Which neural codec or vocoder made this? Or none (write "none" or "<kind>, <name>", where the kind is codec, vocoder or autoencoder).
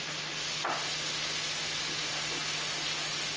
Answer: none